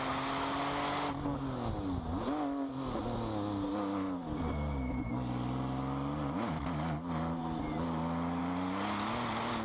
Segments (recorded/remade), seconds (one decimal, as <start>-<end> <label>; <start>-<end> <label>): 0.0-9.6 recorded